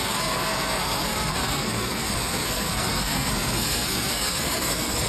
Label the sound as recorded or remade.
remade